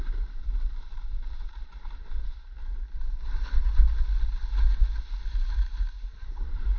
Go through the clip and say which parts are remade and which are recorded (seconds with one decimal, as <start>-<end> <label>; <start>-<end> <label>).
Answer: 0.0-1.7 remade; 1.7-5.4 recorded; 5.4-6.8 remade